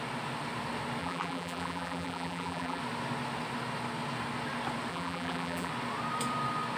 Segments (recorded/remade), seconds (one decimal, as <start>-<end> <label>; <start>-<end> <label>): 0.0-1.0 recorded; 1.0-2.8 remade; 2.8-4.9 recorded; 4.9-5.7 remade; 5.7-6.8 recorded